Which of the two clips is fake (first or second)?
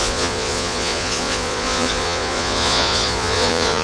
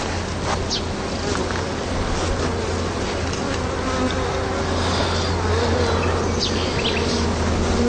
first